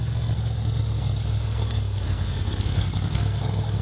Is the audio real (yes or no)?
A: no